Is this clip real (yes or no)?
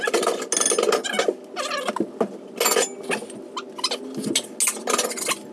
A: yes